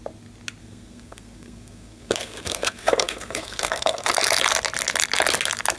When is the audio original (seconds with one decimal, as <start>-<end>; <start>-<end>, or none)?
0.0-0.6; 4.1-5.8